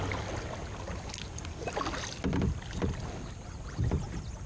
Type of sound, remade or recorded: recorded